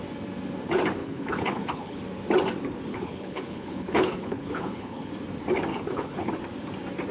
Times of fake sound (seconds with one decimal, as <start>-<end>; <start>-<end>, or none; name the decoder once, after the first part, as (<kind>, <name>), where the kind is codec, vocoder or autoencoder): 1.0-2.0 (codec, HILCodec); 2.9-5.1; 5.7-6.3